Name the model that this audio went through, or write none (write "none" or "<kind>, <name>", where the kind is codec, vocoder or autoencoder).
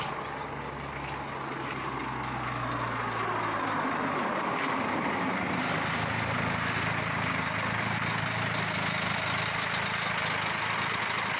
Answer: none